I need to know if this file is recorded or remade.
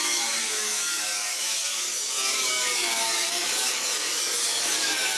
remade